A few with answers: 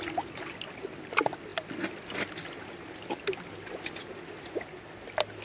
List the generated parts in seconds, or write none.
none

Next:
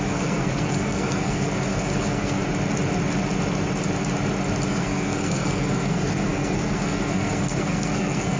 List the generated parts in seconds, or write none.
0.0-2.4 (codec, SNAC); 4.7-8.4

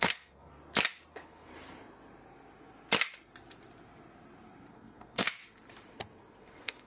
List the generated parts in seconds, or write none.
0.0-0.6 (codec, SNAC); 1.1-1.5; 4.7-5.4; 6.4-6.9

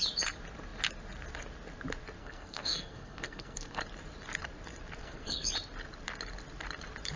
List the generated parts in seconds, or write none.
2.2-3.8 (codec, SNAC); 5.0-5.5